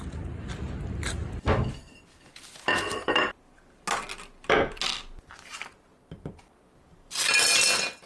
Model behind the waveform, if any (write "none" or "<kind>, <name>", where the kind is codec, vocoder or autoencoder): none